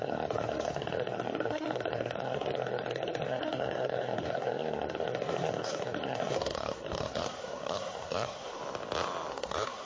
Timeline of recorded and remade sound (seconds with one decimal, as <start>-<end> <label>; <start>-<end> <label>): 0.0-8.6 remade; 8.6-9.3 recorded; 9.3-9.9 remade